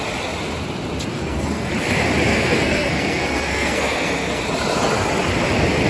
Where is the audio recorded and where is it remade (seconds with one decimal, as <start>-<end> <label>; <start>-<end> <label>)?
0.0-1.1 recorded; 1.1-1.7 remade; 1.7-2.3 recorded; 2.3-4.4 remade; 4.4-5.9 recorded